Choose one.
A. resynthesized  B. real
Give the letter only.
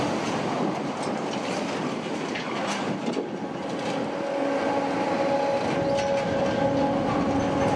B